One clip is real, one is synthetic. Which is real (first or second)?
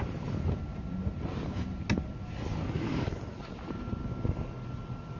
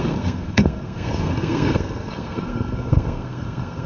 first